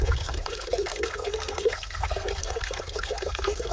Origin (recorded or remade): remade